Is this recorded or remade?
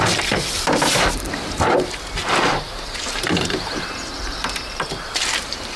remade